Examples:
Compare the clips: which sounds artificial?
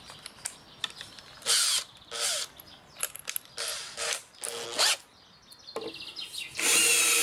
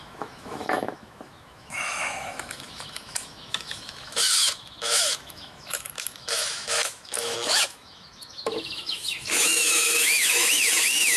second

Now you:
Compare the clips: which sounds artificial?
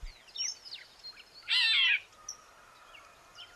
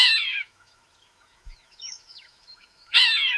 second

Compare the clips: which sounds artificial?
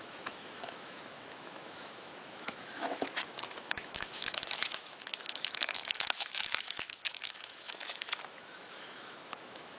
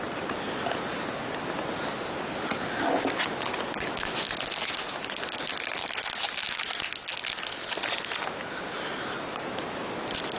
first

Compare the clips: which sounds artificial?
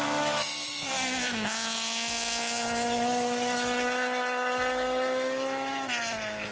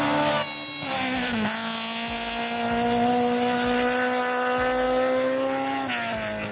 first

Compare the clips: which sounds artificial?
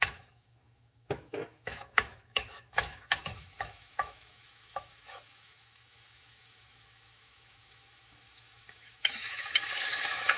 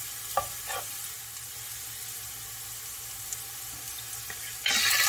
first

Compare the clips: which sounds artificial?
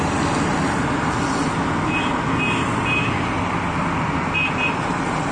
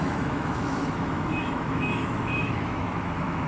second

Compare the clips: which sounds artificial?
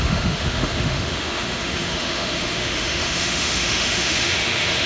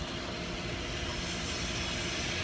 first